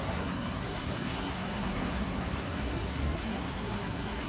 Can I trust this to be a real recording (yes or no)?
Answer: no